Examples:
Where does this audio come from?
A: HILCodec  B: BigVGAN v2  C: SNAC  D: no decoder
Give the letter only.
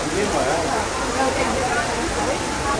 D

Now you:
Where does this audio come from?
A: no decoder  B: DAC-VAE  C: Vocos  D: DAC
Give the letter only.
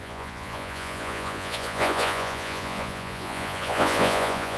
C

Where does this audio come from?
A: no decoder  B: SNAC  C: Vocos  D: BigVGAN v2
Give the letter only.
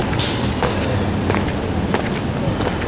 A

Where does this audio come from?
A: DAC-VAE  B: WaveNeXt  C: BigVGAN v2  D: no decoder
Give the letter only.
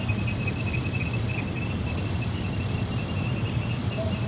D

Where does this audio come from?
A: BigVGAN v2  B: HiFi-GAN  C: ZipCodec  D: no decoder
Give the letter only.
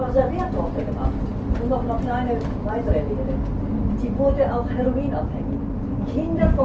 D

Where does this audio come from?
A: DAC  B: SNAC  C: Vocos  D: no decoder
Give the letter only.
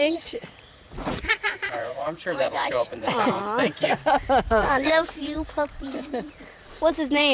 C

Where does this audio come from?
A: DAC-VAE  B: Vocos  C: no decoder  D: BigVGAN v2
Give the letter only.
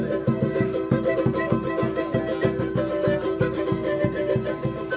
C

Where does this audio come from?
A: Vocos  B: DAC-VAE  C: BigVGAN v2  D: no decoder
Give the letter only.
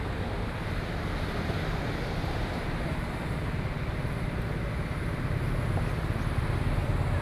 D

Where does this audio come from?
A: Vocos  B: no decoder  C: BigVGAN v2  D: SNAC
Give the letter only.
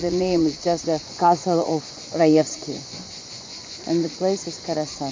A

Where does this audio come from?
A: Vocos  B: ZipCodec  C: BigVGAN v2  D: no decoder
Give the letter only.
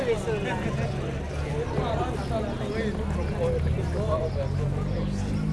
D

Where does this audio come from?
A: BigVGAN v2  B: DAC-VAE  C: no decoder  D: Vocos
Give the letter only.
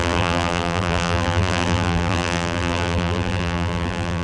A